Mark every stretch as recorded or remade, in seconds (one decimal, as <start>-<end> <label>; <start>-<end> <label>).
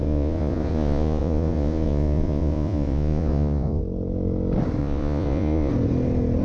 0.0-3.8 remade; 3.8-4.8 recorded; 4.8-5.7 remade; 5.7-6.4 recorded